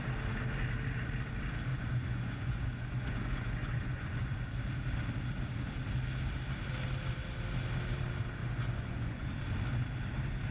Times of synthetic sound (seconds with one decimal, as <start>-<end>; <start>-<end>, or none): 1.7-4.6; 8.4-9.3